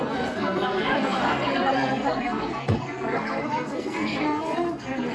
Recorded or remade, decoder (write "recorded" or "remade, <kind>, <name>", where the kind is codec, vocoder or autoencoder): remade, codec, SNAC